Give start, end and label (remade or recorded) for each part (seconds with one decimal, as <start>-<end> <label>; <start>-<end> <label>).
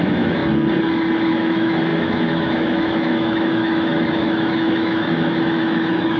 0.0-0.4 remade; 0.4-1.3 recorded; 1.3-6.2 remade